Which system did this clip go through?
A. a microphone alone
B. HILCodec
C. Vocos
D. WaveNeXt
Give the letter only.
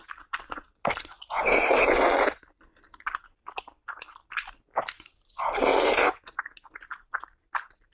A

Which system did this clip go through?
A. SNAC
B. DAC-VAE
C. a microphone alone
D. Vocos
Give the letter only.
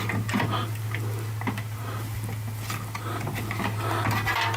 C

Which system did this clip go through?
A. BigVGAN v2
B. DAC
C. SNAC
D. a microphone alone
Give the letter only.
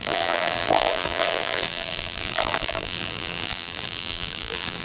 A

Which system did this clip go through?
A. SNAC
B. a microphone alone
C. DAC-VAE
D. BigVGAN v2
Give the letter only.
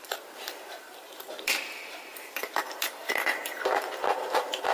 D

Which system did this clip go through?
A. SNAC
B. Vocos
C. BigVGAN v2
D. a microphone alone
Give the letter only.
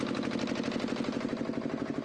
D